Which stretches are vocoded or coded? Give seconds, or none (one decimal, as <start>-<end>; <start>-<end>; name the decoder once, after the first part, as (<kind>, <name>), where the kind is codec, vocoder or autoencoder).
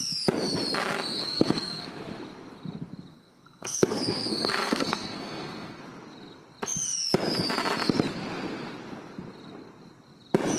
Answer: 1.2-1.9 (codec, SNAC); 3.1-5.8